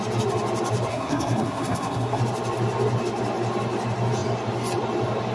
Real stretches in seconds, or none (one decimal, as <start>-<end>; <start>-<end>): 0.0-0.9; 2.2-5.3